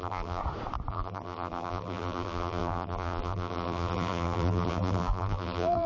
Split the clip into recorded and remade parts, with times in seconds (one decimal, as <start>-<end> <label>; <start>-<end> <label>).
0.0-0.4 remade; 0.4-0.9 recorded; 0.9-5.9 remade